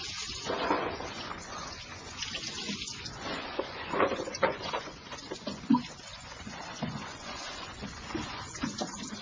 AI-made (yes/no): yes